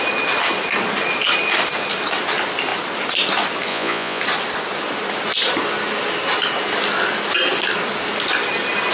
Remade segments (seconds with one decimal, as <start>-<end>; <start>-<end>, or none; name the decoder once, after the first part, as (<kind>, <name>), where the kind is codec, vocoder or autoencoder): 3.7-4.2 (vocoder, Vocos)